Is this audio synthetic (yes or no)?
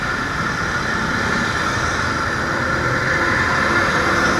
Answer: no